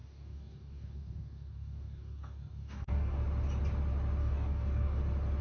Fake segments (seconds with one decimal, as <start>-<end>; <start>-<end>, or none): 0.0-3.2; 4.2-5.0